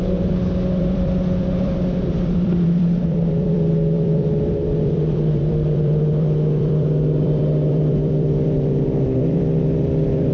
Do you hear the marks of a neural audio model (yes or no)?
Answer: yes